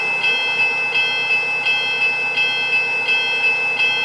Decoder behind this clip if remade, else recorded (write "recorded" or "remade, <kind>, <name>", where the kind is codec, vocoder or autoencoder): recorded